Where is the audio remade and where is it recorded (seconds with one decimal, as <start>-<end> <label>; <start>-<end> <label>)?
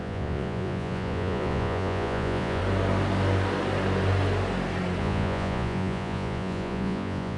0.0-2.6 remade; 2.6-5.0 recorded; 5.0-7.4 remade